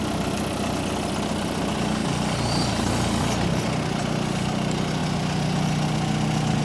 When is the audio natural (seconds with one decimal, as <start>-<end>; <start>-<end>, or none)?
0.0-6.6